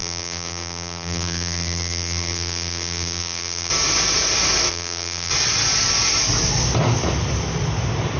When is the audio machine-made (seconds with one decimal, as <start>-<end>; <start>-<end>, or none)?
0.0-3.7; 4.7-5.3